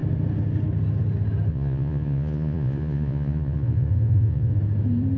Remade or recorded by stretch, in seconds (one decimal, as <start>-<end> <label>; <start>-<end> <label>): 0.0-1.5 recorded; 1.5-4.6 remade; 4.6-5.2 recorded